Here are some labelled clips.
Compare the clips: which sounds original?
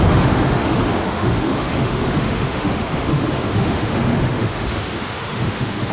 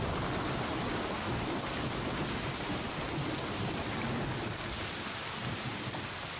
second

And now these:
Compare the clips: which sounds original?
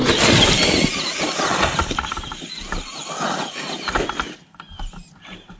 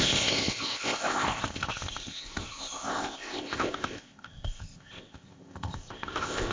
first